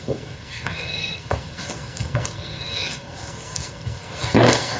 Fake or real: fake